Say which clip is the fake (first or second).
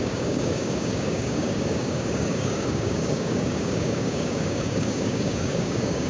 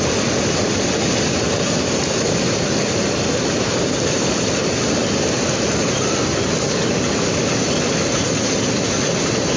first